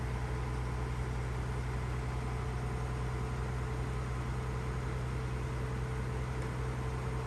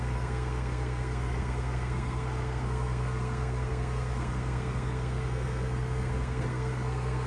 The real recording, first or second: first